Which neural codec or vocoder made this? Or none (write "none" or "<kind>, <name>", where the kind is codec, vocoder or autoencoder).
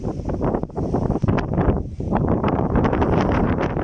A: vocoder, BigVGAN v2